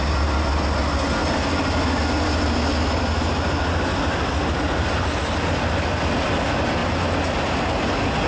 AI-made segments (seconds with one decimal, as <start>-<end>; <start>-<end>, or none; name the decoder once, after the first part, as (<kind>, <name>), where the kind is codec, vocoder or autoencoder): none